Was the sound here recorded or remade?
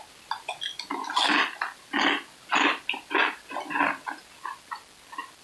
recorded